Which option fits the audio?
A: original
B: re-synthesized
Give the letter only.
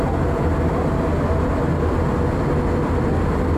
A